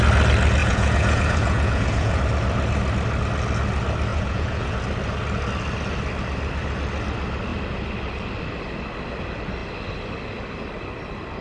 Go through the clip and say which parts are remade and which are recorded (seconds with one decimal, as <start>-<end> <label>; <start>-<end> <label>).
0.0-0.6 recorded; 0.6-2.2 remade; 2.2-4.1 recorded; 4.1-4.8 remade; 4.8-11.4 recorded